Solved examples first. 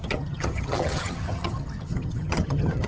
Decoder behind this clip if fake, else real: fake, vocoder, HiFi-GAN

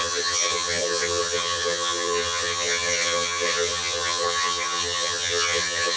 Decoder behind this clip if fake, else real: fake, vocoder, HiFi-GAN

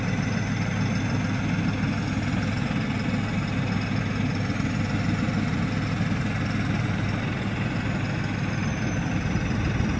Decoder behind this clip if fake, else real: real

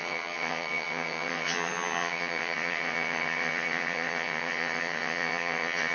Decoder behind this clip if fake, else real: fake, vocoder, HiFi-GAN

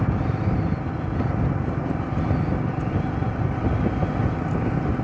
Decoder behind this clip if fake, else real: real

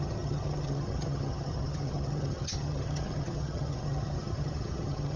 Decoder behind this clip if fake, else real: fake, vocoder, HiFi-GAN